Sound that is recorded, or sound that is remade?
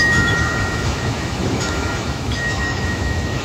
remade